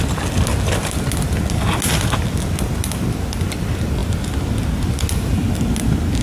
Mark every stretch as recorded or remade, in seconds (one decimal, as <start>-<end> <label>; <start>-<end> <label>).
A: 0.0-6.2 recorded